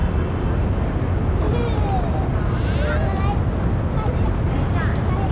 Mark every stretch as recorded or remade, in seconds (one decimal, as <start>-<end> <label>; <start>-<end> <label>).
0.0-5.3 recorded